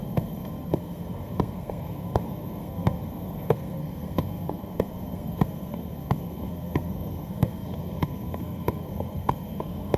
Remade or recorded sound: remade